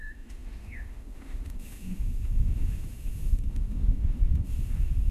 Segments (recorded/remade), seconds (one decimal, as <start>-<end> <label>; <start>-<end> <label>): 0.0-5.1 remade